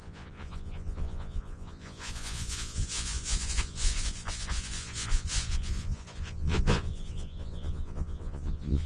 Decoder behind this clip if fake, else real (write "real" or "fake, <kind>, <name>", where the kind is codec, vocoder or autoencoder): fake, vocoder, Vocos